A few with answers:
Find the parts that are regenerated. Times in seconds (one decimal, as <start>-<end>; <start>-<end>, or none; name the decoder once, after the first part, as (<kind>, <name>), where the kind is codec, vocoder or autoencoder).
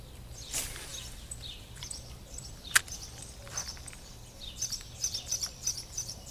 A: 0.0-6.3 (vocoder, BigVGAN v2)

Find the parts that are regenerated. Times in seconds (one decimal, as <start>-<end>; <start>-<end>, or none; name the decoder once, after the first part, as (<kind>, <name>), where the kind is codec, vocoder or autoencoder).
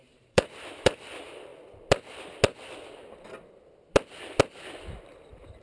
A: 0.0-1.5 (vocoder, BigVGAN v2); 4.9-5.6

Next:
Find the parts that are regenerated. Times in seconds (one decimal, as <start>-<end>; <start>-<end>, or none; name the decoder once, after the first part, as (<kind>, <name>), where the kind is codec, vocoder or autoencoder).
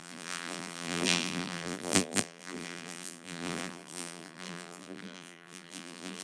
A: 0.0-6.2 (vocoder, BigVGAN v2)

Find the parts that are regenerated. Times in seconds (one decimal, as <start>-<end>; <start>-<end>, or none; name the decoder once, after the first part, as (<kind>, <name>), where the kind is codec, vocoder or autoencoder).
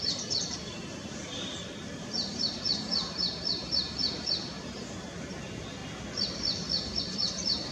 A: 0.0-5.8 (vocoder, BigVGAN v2); 7.0-7.7